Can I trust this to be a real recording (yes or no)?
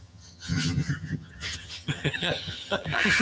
no